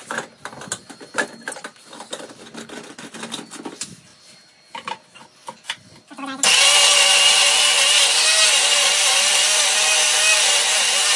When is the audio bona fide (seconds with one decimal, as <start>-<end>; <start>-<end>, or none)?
0.0-11.2